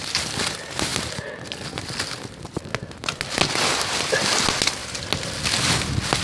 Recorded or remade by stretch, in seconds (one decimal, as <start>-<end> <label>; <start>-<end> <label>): 0.0-6.2 recorded